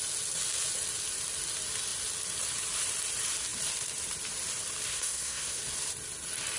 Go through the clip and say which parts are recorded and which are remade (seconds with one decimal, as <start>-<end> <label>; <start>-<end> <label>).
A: 0.0-4.9 recorded; 4.9-5.6 remade; 5.6-6.6 recorded